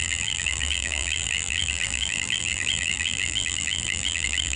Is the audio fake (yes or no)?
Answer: yes